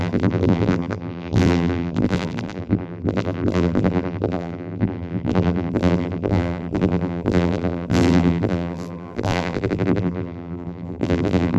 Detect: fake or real fake